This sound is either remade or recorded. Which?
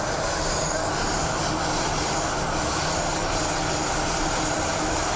recorded